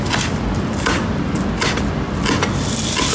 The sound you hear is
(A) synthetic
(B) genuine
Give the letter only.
B